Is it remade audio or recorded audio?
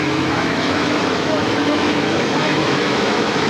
remade